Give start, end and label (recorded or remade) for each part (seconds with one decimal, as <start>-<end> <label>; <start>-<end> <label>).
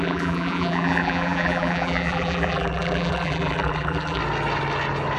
0.0-4.2 remade; 4.2-5.2 recorded